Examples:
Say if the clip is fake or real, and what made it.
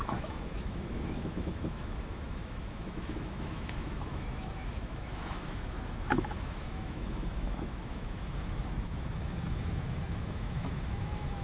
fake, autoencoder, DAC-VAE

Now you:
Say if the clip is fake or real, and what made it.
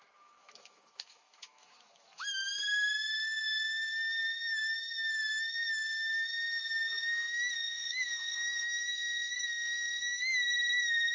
fake, autoencoder, DAC-VAE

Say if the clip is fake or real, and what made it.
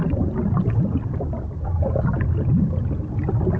real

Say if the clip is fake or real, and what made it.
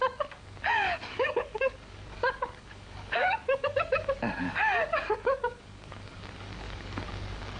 fake, codec, DAC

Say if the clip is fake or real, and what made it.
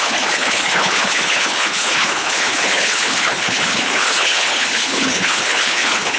fake, codec, HILCodec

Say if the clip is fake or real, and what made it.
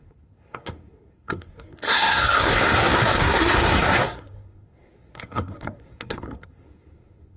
fake, codec, SNAC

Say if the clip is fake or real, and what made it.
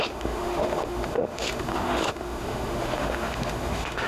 fake, autoencoder, DAC-VAE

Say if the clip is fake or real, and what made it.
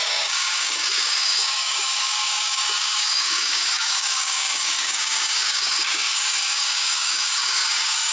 fake, codec, DAC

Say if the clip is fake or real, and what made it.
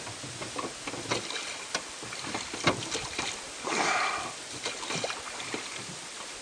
real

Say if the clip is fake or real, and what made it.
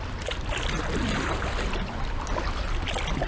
real